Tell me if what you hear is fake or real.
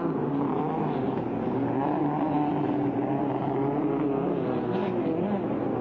real